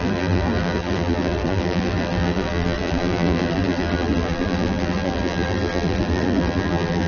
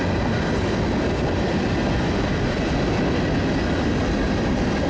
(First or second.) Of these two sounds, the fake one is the first